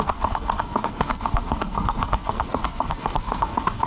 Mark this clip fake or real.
fake